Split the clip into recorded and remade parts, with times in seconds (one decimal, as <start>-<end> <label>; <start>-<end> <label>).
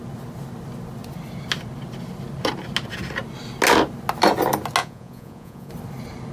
0.0-4.8 recorded; 4.8-5.7 remade; 5.7-6.3 recorded